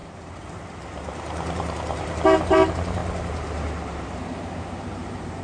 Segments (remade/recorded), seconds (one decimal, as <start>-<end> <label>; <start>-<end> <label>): 0.0-3.0 remade; 3.0-4.3 recorded; 4.3-5.4 remade